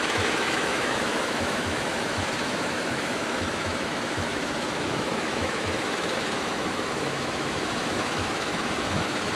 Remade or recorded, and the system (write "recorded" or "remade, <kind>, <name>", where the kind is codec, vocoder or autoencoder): remade, autoencoder, DAC-VAE